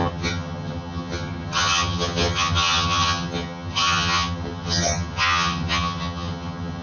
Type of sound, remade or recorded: remade